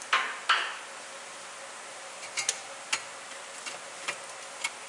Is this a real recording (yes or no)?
yes